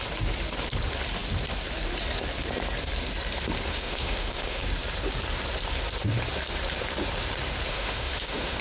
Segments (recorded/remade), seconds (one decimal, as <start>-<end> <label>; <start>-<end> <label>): 0.0-3.7 recorded; 3.7-4.6 remade; 4.6-7.7 recorded; 7.7-8.6 remade